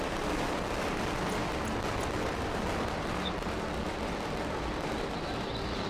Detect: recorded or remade remade